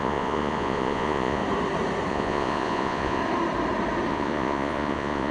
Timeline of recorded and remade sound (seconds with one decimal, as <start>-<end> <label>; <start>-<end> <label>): 0.0-1.4 remade; 1.4-2.1 recorded; 2.1-3.2 remade; 3.2-4.1 recorded; 4.1-5.3 remade